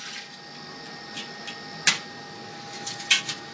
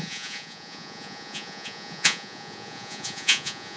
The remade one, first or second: second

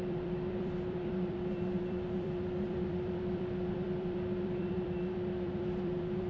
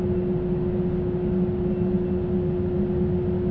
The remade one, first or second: first